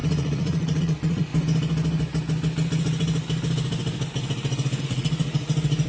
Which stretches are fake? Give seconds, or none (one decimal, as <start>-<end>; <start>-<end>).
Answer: 0.0-1.3; 4.8-5.9